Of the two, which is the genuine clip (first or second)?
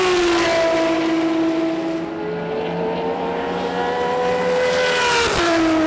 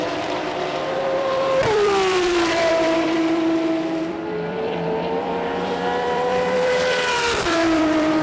first